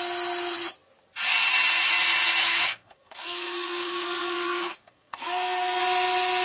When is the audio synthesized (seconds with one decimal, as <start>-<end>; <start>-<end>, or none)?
2.4-5.8